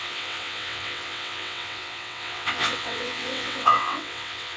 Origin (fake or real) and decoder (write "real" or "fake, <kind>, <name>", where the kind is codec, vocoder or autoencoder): fake, vocoder, WaveNeXt